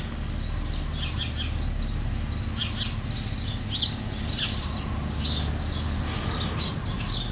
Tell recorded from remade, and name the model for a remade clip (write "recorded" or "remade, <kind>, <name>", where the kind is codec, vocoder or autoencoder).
recorded